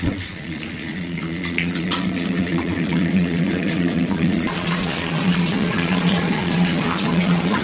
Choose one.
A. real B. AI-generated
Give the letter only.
B